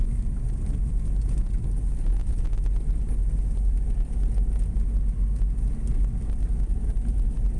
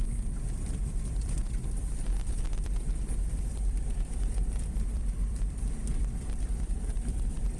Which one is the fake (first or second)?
second